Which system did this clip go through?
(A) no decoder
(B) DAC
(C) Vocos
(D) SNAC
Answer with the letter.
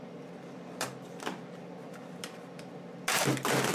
A